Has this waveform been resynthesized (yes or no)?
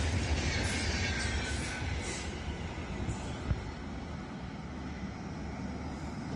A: no